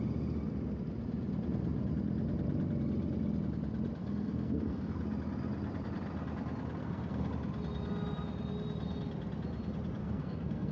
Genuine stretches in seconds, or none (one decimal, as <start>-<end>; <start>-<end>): 0.0-4.0; 5.0-6.8; 7.3-10.0

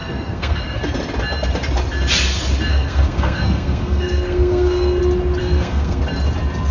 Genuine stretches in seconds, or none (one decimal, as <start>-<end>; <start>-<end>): 0.8-2.7; 5.0-5.4; 6.0-6.7

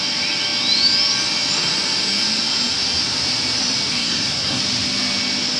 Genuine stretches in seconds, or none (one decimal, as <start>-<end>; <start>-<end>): 0.0-3.9; 4.6-5.6

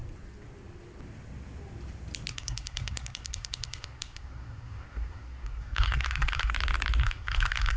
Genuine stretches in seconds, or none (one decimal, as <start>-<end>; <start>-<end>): 0.0-2.3; 6.5-7.0

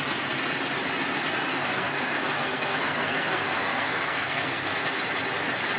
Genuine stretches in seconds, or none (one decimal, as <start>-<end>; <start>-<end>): 0.0-1.5; 5.0-5.8

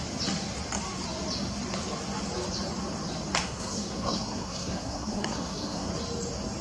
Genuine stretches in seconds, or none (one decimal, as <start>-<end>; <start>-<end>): 0.0-3.4; 5.9-6.6